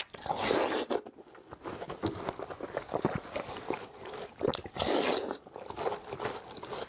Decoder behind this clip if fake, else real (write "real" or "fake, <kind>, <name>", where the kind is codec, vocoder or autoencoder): real